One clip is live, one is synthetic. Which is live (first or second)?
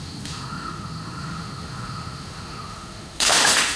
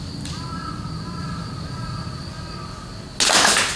second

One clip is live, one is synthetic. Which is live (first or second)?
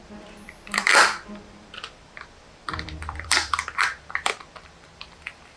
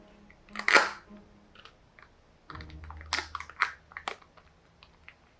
second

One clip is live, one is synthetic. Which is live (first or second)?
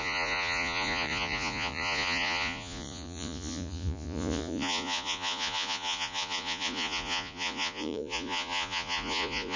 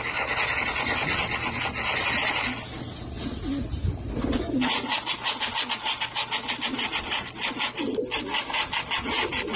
second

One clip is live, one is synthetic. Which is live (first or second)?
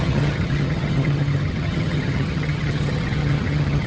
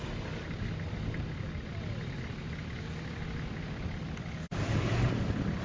second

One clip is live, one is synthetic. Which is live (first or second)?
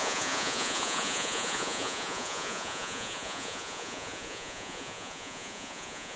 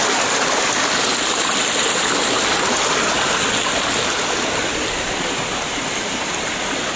second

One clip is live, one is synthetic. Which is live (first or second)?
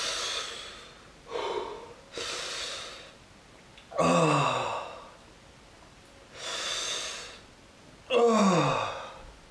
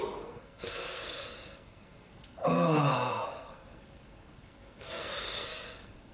first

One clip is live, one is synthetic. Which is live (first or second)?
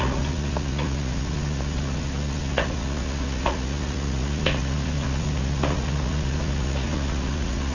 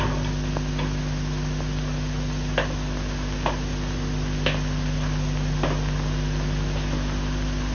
second